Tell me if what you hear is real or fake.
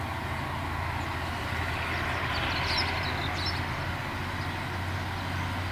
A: real